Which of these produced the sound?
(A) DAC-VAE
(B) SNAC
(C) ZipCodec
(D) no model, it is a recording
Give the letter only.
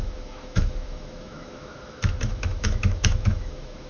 A